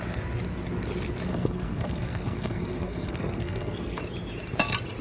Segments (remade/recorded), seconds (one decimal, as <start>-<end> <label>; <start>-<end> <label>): 0.0-1.3 recorded; 1.3-4.0 remade; 4.0-5.0 recorded